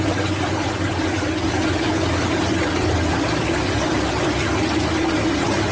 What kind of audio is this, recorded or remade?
recorded